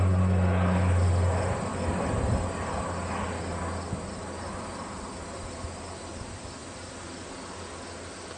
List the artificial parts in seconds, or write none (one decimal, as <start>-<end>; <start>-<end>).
none